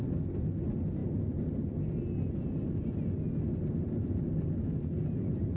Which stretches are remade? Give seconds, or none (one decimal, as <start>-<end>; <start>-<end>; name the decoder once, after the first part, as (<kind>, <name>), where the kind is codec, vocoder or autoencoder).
none